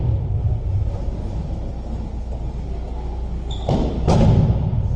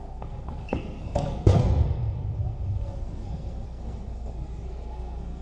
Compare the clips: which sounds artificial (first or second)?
second